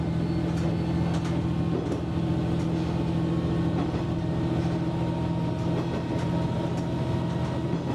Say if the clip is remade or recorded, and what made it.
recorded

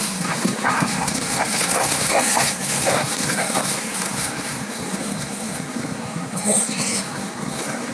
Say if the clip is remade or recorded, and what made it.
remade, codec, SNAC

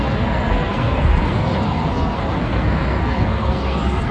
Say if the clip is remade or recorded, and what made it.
remade, codec, SNAC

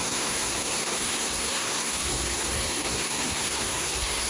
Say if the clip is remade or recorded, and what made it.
remade, codec, SNAC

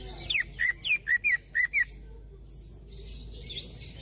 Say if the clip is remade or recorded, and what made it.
recorded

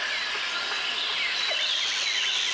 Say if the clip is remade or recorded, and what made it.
recorded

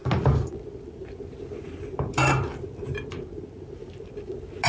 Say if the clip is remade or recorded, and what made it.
recorded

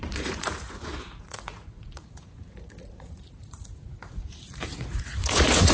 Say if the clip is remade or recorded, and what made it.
remade, vocoder, Vocos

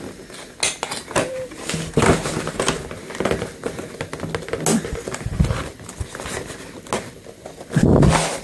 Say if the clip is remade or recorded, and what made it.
recorded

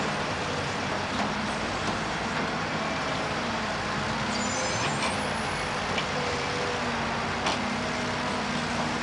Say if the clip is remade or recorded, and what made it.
recorded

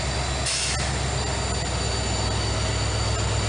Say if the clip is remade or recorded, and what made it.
recorded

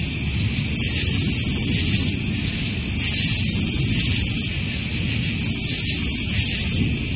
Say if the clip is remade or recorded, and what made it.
recorded